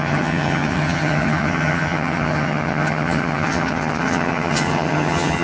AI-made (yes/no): yes